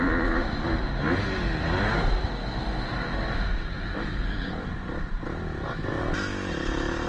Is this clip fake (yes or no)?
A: no